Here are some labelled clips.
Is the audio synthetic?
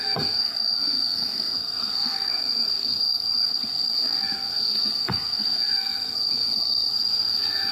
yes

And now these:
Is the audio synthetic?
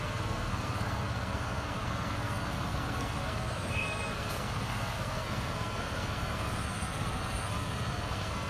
yes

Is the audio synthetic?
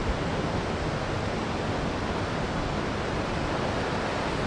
no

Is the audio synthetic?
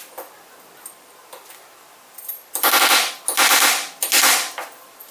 no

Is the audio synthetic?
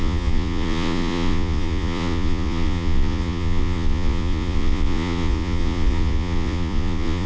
yes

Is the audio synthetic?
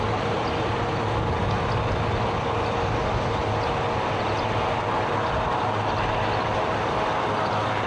no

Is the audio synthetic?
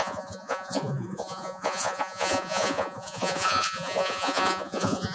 yes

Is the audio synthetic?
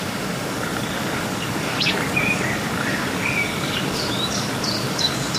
yes